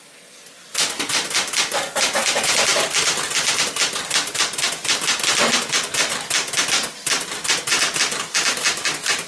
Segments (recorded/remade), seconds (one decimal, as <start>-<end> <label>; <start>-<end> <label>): 0.0-9.3 recorded